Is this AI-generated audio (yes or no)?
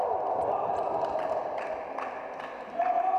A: no